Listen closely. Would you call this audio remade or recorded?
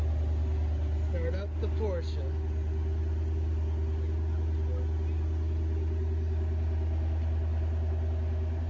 recorded